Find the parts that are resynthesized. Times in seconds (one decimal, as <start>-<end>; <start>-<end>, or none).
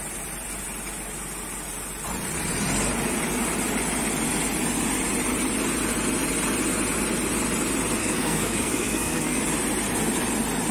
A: 8.0-9.4